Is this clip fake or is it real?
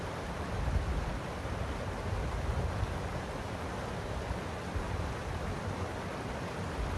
real